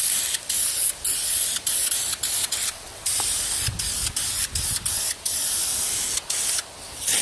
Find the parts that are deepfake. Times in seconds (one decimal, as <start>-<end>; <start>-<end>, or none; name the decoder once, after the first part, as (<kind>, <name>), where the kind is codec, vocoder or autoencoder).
2.4-3.0 (vocoder, WaveNeXt)